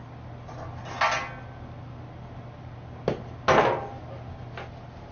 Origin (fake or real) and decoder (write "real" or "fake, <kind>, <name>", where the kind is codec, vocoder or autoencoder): real